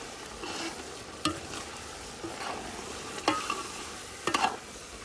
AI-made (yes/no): no